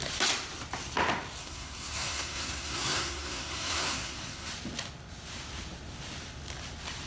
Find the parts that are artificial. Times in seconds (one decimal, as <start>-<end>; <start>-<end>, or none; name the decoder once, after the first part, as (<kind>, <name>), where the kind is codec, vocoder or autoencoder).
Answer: 1.4-4.5 (codec, SNAC)